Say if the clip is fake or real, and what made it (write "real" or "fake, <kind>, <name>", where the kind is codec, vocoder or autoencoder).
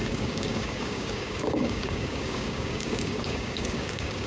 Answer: fake, codec, DAC